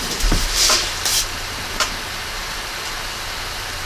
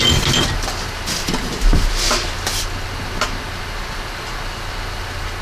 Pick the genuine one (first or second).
second